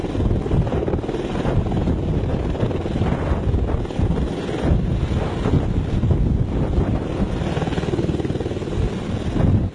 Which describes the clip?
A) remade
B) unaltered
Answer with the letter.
B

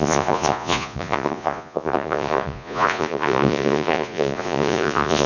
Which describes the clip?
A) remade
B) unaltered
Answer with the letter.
A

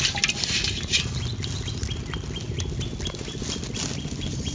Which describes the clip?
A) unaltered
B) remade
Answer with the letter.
A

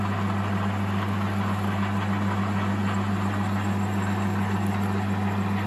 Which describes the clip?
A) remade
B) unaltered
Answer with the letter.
B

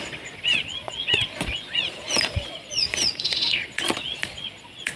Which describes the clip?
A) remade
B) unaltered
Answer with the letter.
A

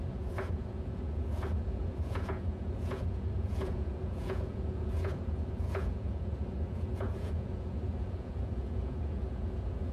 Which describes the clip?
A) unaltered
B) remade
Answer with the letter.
B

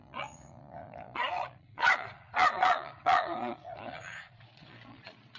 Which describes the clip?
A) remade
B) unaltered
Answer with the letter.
A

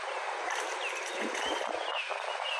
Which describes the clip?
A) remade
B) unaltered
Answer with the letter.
B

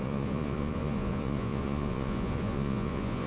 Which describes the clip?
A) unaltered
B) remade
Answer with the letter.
B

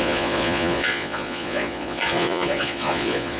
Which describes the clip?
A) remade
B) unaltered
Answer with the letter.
A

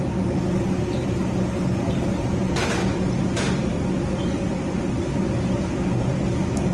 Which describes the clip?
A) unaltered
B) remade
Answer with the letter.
A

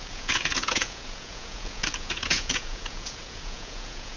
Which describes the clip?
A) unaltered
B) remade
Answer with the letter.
B